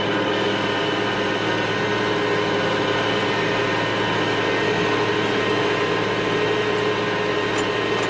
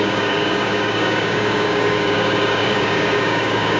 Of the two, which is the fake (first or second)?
second